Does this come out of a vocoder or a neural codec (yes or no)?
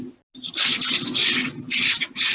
no